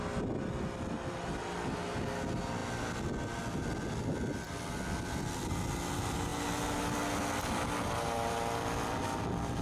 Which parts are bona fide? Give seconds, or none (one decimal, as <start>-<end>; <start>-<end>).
0.0-9.6